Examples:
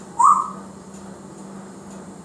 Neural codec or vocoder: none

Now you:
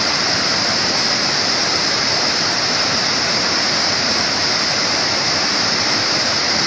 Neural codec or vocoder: vocoder, BigVGAN v2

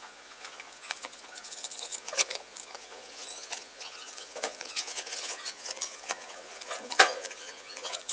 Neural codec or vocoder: vocoder, Vocos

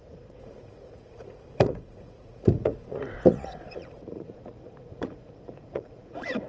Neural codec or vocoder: vocoder, Vocos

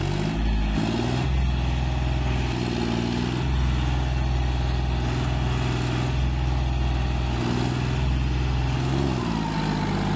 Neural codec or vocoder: none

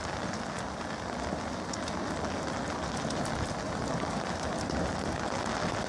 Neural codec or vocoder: none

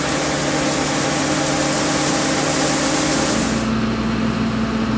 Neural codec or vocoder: none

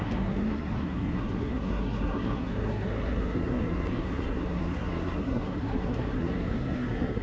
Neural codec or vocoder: codec, SNAC